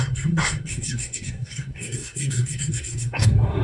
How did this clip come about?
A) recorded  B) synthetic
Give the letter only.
B